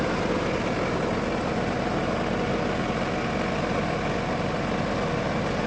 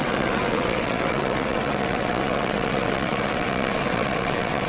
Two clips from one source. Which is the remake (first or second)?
second